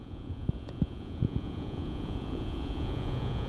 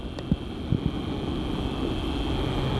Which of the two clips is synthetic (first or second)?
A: first